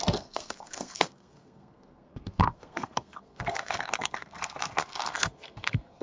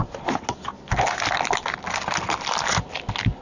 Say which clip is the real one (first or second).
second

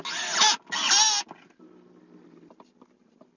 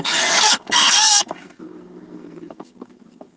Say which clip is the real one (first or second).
first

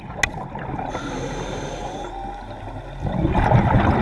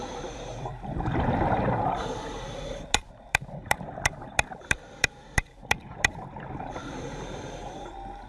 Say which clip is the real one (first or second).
first